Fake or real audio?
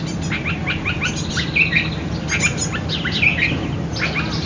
real